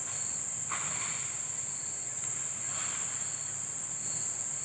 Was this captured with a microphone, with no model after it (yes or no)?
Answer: yes